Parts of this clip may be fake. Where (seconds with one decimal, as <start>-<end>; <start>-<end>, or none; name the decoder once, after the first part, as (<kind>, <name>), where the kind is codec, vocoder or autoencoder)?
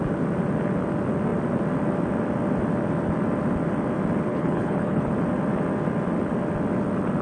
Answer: 4.3-5.1 (codec, HILCodec)